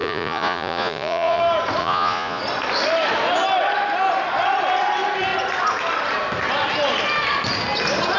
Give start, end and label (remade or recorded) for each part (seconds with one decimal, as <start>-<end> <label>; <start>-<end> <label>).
0.0-1.4 remade; 1.4-1.8 recorded; 1.8-2.4 remade; 2.4-8.2 recorded

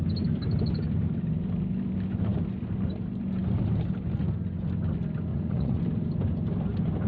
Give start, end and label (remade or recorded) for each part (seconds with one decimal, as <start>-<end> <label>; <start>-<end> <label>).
0.0-5.3 recorded; 5.3-5.8 remade; 5.8-7.1 recorded

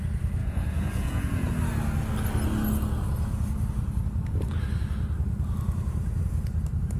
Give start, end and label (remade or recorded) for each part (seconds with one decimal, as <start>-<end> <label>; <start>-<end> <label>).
0.0-0.4 recorded; 0.4-1.5 remade; 1.5-7.0 recorded

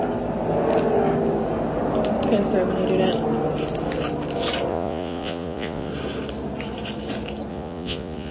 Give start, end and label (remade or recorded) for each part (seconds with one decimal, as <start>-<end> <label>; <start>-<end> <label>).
0.0-4.7 recorded; 4.7-5.9 remade; 5.9-7.5 recorded; 7.5-8.3 remade

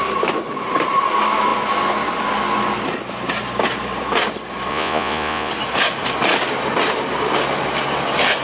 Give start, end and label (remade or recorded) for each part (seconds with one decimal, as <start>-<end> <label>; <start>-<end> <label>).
0.0-4.7 recorded; 4.7-5.5 remade; 5.5-8.4 recorded